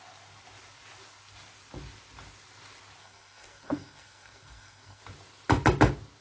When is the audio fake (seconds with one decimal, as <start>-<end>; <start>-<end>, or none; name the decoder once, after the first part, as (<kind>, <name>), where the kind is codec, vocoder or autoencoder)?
3.0-5.0 (codec, SNAC)